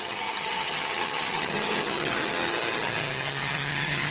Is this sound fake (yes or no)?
yes